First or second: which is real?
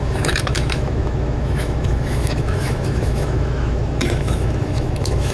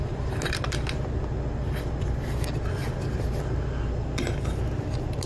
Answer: second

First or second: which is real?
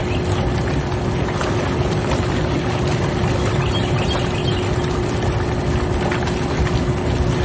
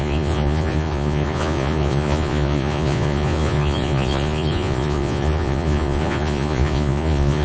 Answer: first